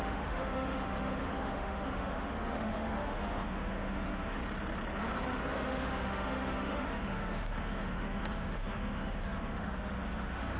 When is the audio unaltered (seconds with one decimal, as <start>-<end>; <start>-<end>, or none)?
4.4-5.4